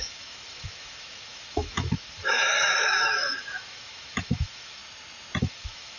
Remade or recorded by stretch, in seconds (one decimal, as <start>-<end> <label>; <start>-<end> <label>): 0.0-4.8 remade; 4.8-5.4 recorded; 5.4-6.0 remade